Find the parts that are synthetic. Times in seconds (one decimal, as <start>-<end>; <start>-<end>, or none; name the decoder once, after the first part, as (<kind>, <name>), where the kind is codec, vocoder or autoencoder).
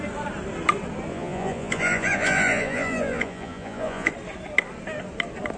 1.1-4.1 (vocoder, Vocos)